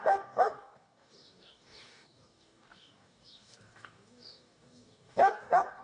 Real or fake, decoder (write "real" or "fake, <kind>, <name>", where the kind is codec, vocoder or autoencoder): fake, codec, DAC